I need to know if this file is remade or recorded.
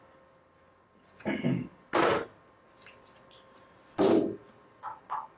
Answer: recorded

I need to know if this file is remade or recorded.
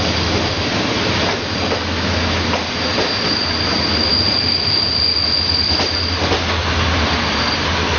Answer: recorded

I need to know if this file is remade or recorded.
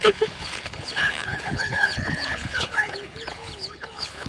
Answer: remade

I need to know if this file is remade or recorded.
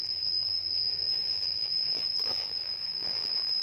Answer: remade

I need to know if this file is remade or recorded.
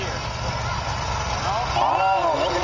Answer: recorded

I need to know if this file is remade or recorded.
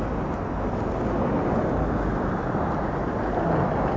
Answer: recorded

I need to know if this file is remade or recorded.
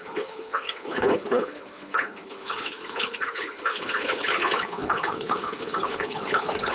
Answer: remade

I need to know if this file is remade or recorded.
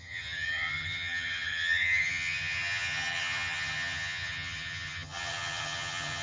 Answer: remade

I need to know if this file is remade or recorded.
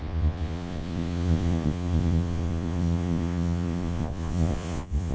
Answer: remade